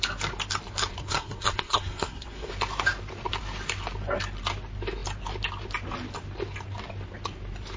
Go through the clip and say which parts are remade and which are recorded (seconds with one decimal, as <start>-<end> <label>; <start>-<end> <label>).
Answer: 0.0-1.0 recorded; 1.0-2.5 remade; 2.5-7.8 recorded